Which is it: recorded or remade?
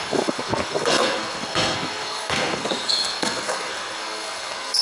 remade